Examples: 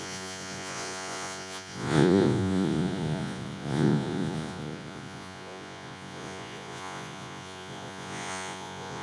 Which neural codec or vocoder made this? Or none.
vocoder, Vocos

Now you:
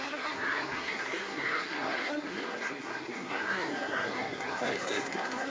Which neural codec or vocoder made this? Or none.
codec, SNAC